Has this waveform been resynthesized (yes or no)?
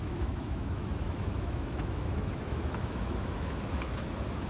yes